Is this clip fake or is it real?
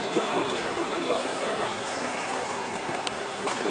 fake